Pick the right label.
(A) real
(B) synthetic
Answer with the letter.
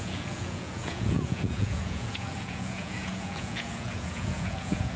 B